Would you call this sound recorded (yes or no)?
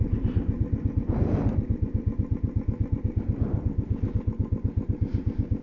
yes